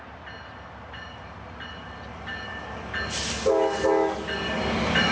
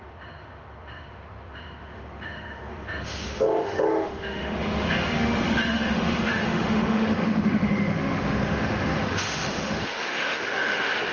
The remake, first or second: second